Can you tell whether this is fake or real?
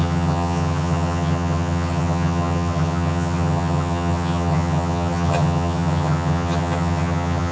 fake